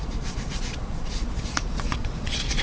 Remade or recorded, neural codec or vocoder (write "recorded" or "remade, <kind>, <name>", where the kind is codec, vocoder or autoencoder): remade, vocoder, Vocos